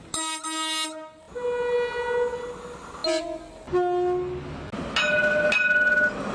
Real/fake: real